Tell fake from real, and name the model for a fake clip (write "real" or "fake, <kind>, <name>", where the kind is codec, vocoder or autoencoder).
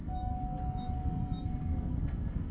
fake, codec, SNAC